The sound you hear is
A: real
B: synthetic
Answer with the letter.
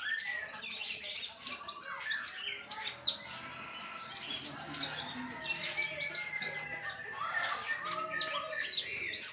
A